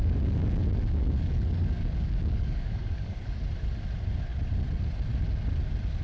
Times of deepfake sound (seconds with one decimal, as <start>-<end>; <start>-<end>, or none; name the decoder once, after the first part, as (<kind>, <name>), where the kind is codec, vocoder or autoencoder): 0.0-3.4 (codec, DAC)